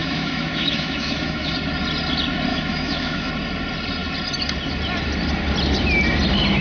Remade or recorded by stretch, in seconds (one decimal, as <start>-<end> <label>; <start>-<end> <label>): 0.0-1.5 remade; 1.5-2.5 recorded; 2.5-3.3 remade; 3.3-6.6 recorded